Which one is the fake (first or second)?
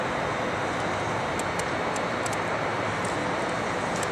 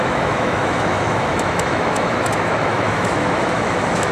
second